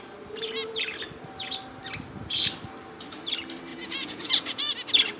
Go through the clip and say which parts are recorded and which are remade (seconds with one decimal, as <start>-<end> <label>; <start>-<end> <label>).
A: 0.0-3.7 recorded; 3.7-4.7 remade; 4.7-5.2 recorded